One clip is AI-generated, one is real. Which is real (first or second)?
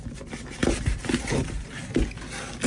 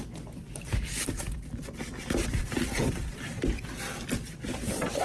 first